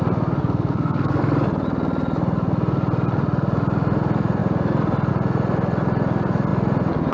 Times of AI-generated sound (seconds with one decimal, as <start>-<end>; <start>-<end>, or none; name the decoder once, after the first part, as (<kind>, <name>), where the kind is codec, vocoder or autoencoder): 0.4-1.2 (codec, SNAC)